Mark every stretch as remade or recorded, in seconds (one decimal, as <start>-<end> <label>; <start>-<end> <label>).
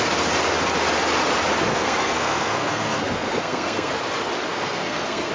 0.0-1.7 recorded; 1.7-4.0 remade; 4.0-4.5 recorded; 4.5-5.3 remade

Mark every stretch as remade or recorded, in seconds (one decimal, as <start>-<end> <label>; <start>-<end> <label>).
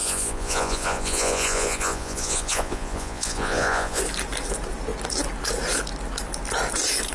0.0-4.0 remade; 4.0-7.1 recorded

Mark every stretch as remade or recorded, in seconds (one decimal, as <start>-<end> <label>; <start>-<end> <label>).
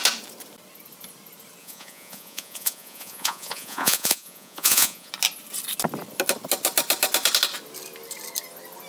0.0-1.6 recorded; 1.6-5.1 remade; 5.1-8.9 recorded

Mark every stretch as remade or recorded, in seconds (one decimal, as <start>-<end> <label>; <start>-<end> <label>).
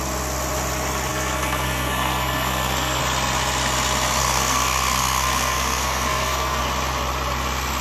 0.0-1.1 recorded; 1.1-3.0 remade; 3.0-4.2 recorded; 4.2-6.6 remade; 6.6-7.8 recorded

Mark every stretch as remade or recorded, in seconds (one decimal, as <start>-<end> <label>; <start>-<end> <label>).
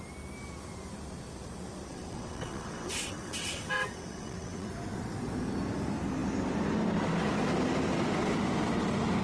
0.0-1.9 recorded; 1.9-4.7 remade; 4.7-9.2 recorded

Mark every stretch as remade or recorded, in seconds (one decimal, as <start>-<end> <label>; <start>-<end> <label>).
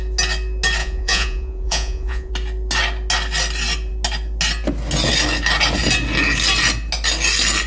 0.0-0.8 recorded; 0.8-2.3 remade; 2.3-7.7 recorded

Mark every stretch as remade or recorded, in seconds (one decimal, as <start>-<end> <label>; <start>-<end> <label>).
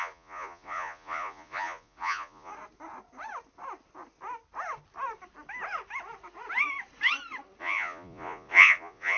0.0-2.5 remade; 2.5-7.6 recorded; 7.6-9.2 remade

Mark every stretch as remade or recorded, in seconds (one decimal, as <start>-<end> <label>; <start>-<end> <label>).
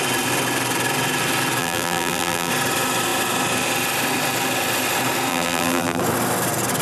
0.0-1.6 recorded; 1.6-2.5 remade; 2.5-5.3 recorded; 5.3-6.0 remade; 6.0-6.8 recorded